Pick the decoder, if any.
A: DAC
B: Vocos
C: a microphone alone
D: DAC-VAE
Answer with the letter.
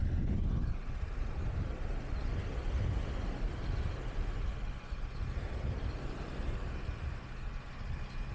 C